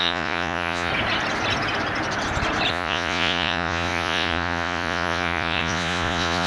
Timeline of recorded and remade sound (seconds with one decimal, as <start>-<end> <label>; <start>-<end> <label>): 0.0-0.9 remade; 0.9-2.7 recorded; 2.7-6.5 remade